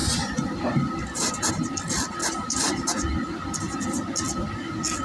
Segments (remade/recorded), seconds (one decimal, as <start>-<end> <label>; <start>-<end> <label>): 0.0-1.5 remade; 1.5-2.2 recorded; 2.2-3.0 remade; 3.0-5.0 recorded

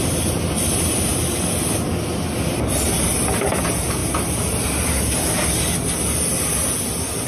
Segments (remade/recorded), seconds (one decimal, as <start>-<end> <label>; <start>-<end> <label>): 0.0-7.3 recorded